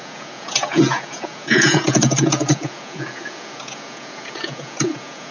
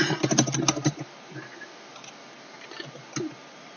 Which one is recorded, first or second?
second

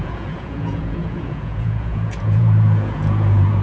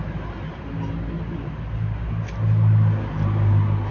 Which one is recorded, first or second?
second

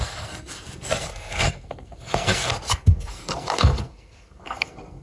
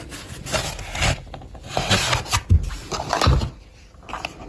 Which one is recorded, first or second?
second